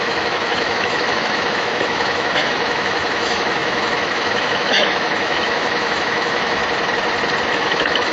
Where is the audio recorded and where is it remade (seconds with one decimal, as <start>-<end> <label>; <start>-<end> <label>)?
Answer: 0.0-6.6 remade; 6.6-7.5 recorded; 7.5-8.1 remade